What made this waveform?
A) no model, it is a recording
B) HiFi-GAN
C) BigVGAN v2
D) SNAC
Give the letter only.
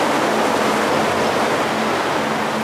A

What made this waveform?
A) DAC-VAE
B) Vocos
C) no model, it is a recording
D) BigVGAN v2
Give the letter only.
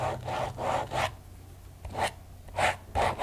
C